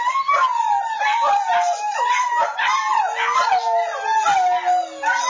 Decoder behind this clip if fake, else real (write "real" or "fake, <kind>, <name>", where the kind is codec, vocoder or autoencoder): real